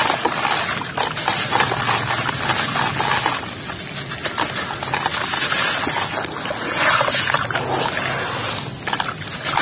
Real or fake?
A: real